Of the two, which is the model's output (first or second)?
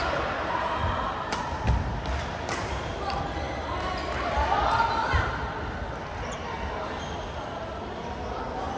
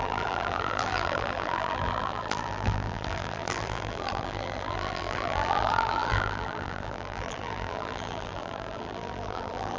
second